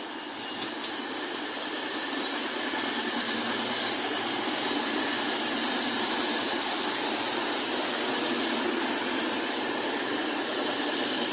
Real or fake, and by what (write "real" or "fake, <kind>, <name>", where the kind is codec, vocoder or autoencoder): fake, vocoder, BigVGAN v2